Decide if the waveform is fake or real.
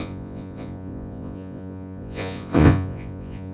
fake